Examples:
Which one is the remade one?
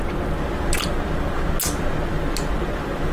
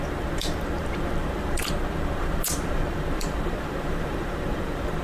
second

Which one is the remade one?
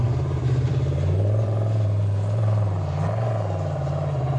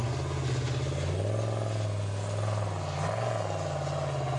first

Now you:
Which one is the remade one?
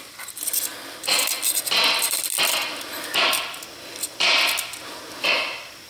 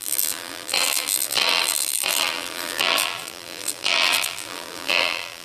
second